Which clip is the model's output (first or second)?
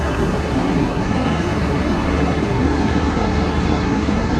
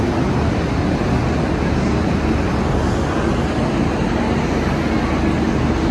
first